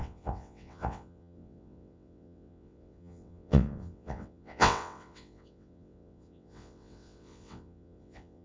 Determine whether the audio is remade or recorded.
remade